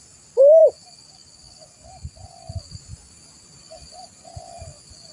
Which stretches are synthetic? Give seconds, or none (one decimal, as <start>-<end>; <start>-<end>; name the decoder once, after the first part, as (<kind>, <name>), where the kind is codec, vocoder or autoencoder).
none